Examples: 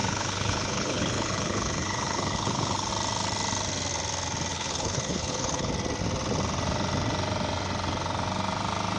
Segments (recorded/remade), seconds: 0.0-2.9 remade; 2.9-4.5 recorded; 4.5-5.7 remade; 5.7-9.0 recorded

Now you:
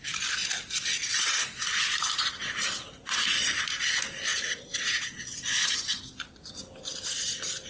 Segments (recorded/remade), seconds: 0.0-4.3 recorded; 4.3-5.2 remade; 5.2-7.7 recorded

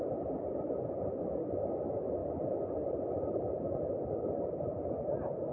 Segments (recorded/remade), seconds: 0.0-5.5 recorded

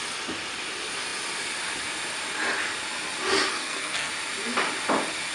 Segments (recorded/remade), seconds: 0.0-3.5 recorded; 3.5-4.1 remade; 4.1-5.3 recorded

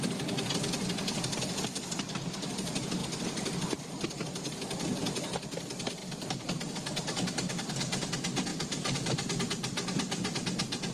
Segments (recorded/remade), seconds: 0.0-3.0 recorded; 3.0-3.8 remade; 3.8-6.0 recorded; 6.0-6.7 remade; 6.7-8.5 recorded; 8.5-9.3 remade; 9.3-10.9 recorded